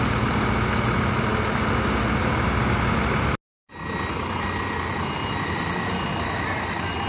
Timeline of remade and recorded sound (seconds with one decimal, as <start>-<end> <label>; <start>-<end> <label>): 0.0-7.1 recorded

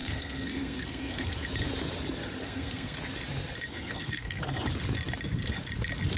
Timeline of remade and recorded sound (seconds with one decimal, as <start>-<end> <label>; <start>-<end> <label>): 0.0-1.3 remade; 1.3-2.4 recorded; 2.4-3.0 remade; 3.0-3.7 recorded; 3.7-4.4 remade; 4.4-6.2 recorded

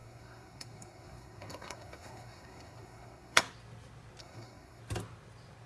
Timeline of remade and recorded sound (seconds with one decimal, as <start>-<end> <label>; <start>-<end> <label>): 0.0-3.4 remade; 3.4-4.2 recorded; 4.2-4.8 remade; 4.8-5.7 recorded

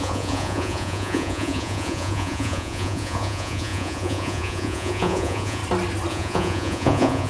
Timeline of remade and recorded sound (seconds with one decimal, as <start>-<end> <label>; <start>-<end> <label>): 0.0-5.6 remade; 5.6-6.1 recorded; 6.1-7.3 remade